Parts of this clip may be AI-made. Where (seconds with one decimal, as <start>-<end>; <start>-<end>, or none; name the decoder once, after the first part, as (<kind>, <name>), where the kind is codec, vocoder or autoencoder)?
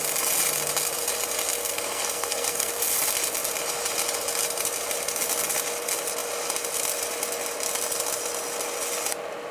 1.6-2.7 (codec, SNAC)